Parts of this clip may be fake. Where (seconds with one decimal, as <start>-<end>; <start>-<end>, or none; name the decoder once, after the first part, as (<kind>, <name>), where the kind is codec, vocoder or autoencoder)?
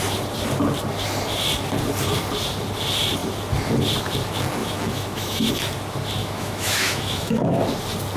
4.6-5.5 (autoencoder, DAC-VAE); 6.2-7.6